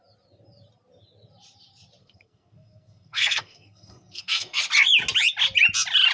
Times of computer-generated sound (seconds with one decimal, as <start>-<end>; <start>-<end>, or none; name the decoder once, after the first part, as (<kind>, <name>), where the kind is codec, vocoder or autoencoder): 2.0-4.6 (codec, SNAC)